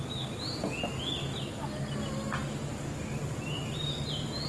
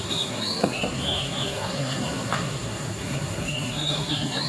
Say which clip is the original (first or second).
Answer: first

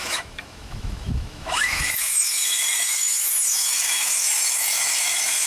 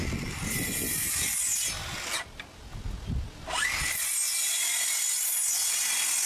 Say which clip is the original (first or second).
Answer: second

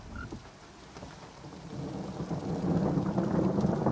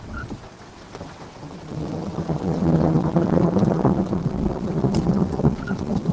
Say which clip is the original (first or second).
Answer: first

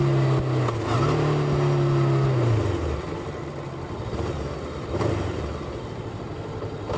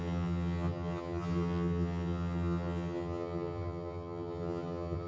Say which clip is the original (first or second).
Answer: first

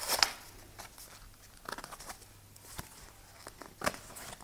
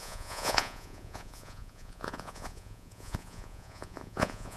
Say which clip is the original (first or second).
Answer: first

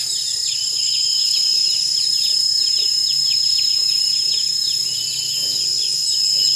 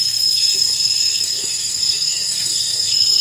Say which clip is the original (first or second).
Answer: first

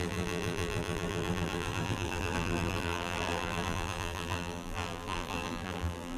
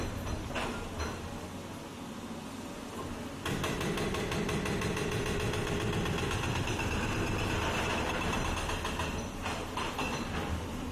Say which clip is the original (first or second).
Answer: second